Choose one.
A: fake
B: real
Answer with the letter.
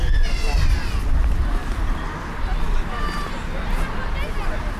B